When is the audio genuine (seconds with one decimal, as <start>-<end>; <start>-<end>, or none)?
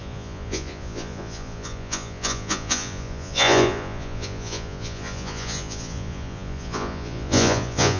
none